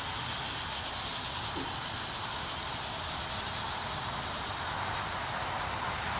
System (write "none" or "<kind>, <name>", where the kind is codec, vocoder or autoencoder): none